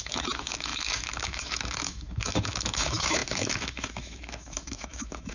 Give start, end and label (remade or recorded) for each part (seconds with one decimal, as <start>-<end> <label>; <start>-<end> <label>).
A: 0.0-5.3 remade